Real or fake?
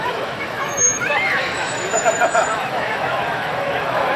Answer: fake